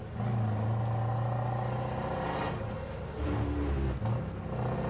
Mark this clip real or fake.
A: real